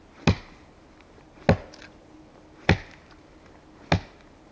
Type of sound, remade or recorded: recorded